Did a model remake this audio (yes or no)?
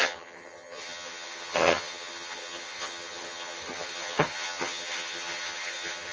yes